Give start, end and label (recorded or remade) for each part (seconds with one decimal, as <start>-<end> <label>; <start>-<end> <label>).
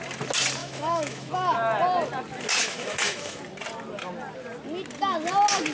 0.0-0.6 recorded; 0.6-1.3 remade; 1.3-2.6 recorded; 2.6-3.4 remade; 3.4-5.7 recorded